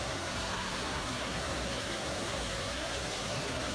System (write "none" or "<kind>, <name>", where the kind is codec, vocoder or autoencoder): codec, SNAC